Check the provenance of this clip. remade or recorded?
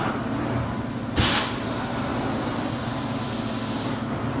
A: recorded